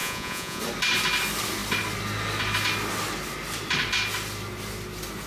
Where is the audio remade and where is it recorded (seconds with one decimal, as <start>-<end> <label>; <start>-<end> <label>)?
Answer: 0.0-0.6 remade; 0.6-5.3 recorded